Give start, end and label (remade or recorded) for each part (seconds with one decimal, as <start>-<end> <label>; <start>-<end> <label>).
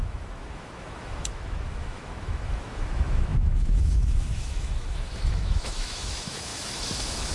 0.0-7.3 remade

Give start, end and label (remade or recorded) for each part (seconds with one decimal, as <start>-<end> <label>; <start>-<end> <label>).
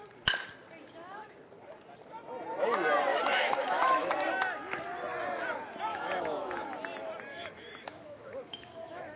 0.0-3.1 recorded; 3.1-4.1 remade; 4.1-5.9 recorded; 5.9-6.7 remade; 6.7-7.3 recorded; 7.3-9.2 remade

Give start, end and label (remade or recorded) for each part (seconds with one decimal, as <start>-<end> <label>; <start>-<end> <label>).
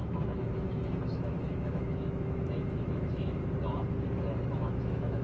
0.0-3.4 remade; 3.4-4.5 recorded; 4.5-5.2 remade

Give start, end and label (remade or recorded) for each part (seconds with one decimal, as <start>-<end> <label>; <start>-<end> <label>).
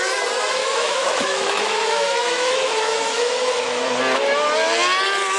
0.0-0.6 recorded; 0.6-3.8 remade; 3.8-5.4 recorded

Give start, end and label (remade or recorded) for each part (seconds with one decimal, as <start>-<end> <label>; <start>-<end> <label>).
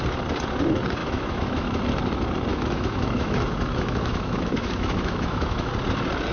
0.0-1.0 recorded; 1.0-1.8 remade; 1.8-2.5 recorded; 2.5-5.7 remade; 5.7-6.3 recorded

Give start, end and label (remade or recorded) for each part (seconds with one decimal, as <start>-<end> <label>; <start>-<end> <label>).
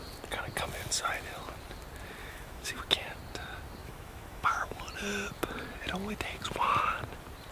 0.0-2.2 recorded; 2.2-2.8 remade; 2.8-3.8 recorded; 3.8-4.8 remade; 4.8-7.5 recorded